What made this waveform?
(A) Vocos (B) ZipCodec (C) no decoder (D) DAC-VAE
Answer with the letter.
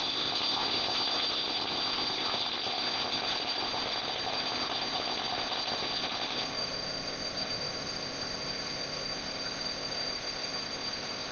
B